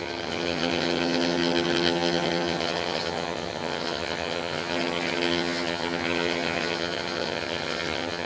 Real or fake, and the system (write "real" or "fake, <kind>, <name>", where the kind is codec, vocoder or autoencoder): fake, vocoder, HiFi-GAN